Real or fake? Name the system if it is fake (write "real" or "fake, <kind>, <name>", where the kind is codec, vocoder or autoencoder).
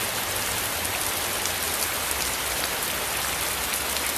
real